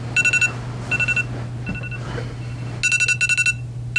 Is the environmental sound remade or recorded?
recorded